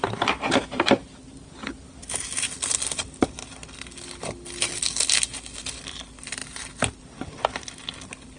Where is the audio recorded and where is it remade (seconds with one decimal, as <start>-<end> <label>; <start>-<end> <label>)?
0.0-8.4 recorded